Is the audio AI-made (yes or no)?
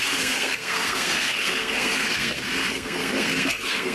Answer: yes